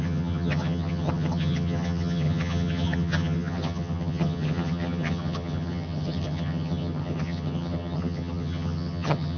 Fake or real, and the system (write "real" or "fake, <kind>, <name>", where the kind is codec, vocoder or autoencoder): fake, vocoder, HiFi-GAN